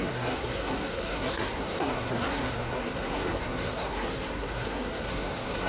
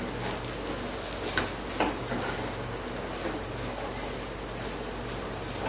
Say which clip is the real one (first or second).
second